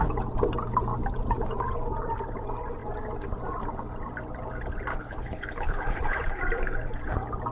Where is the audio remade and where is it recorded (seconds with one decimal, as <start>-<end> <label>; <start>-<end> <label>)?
0.0-4.9 recorded; 4.9-6.4 remade; 6.4-7.5 recorded